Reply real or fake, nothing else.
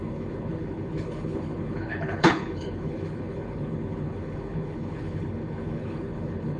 fake